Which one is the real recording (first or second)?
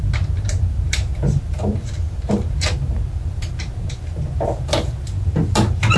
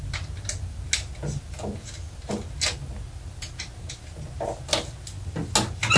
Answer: second